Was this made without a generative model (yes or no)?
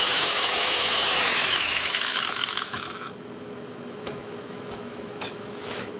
no